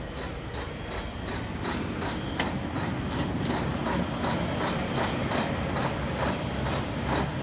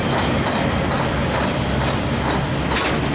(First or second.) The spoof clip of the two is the first